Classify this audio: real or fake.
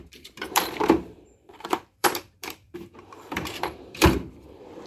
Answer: fake